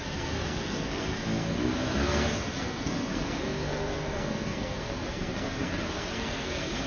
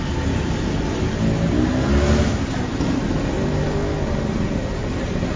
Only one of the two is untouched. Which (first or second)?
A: second